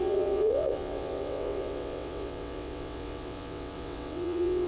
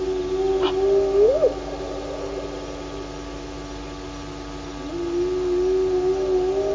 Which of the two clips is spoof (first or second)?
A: first